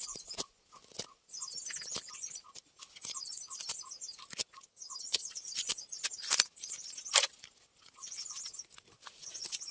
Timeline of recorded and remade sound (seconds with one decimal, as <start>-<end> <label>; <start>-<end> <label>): 0.0-4.7 recorded; 4.7-5.3 remade; 5.3-9.7 recorded